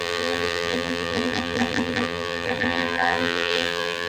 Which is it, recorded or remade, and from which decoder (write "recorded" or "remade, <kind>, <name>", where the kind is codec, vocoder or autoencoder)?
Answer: remade, vocoder, BigVGAN v2